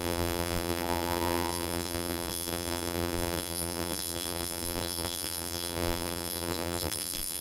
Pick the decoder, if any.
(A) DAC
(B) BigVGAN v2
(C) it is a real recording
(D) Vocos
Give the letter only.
B